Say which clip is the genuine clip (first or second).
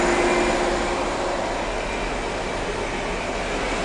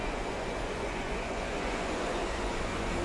first